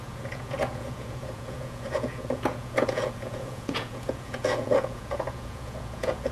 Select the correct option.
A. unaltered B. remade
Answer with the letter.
B